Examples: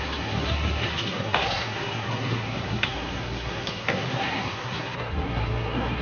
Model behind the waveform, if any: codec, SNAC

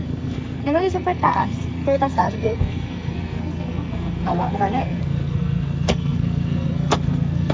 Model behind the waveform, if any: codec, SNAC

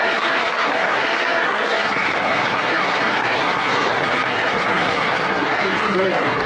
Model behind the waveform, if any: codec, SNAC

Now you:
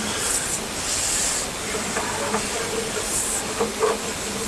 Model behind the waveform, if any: none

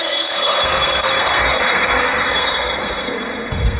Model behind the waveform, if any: codec, SNAC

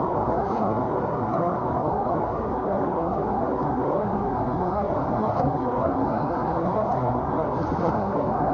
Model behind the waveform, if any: codec, SNAC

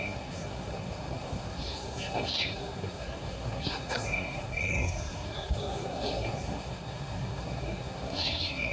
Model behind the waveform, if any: codec, SNAC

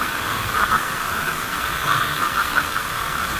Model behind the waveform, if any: codec, SNAC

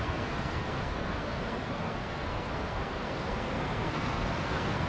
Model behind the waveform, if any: codec, SNAC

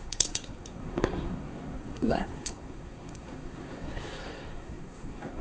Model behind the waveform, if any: codec, SNAC